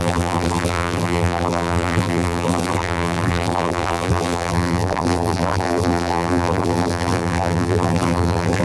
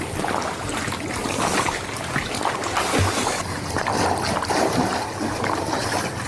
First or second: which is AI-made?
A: first